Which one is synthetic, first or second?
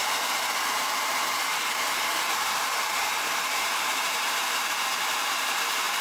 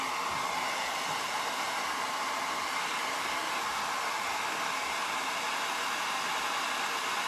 first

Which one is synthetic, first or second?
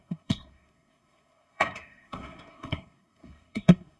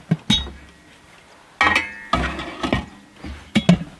first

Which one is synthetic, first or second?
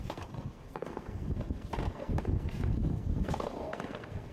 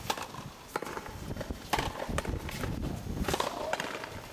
first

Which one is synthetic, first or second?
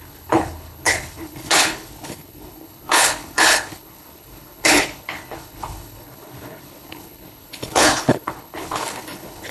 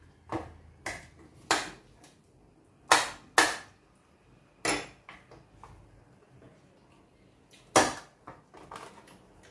first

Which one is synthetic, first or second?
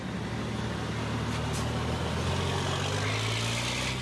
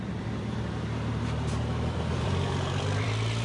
second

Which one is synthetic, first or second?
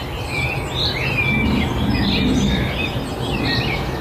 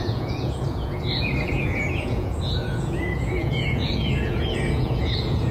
second